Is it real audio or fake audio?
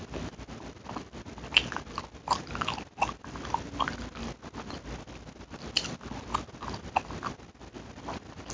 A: real